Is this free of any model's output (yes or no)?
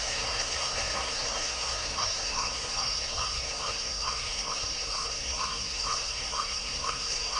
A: no